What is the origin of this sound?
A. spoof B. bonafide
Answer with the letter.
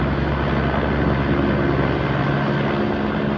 B